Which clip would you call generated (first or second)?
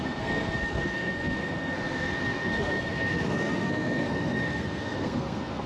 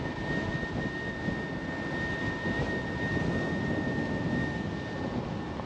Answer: first